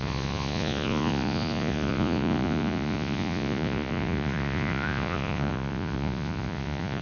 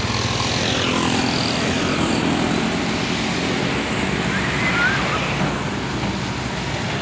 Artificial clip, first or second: first